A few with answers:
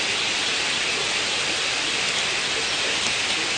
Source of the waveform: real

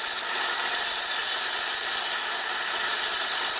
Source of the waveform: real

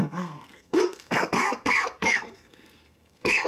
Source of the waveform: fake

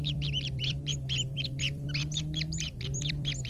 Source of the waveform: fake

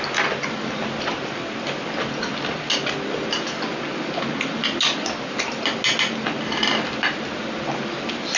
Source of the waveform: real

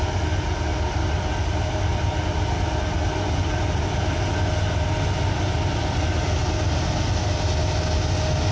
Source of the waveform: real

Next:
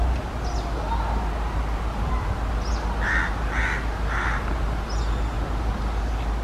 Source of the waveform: real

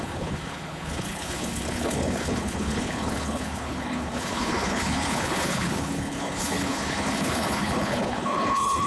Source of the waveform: fake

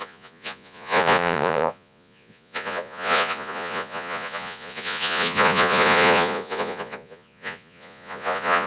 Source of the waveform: fake